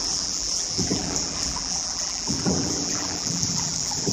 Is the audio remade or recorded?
remade